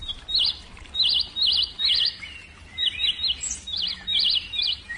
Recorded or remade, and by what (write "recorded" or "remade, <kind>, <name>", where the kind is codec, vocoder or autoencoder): recorded